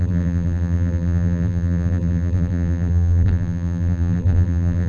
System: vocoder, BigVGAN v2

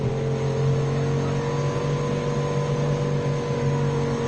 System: none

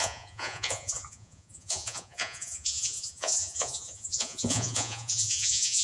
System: vocoder, Vocos